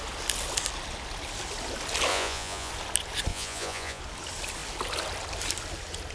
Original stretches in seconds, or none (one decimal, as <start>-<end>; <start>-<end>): 0.0-2.1; 2.7-3.3; 4.0-6.1